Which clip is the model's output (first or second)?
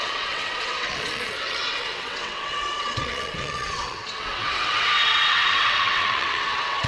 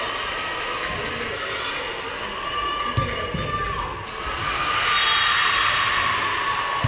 first